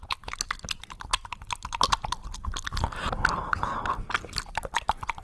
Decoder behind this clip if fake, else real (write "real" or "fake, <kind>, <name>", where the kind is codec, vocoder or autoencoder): real